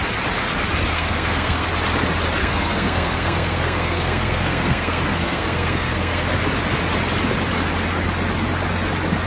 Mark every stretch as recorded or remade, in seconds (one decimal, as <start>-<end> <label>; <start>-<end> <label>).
0.0-0.9 recorded; 0.9-1.7 remade; 1.7-2.4 recorded; 2.4-6.4 remade; 6.4-9.3 recorded